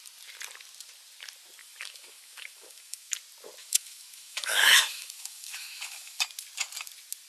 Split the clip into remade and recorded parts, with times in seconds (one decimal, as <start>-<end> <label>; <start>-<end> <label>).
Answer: 0.0-1.6 recorded; 1.6-3.1 remade; 3.1-3.6 recorded; 3.6-6.2 remade; 6.2-7.3 recorded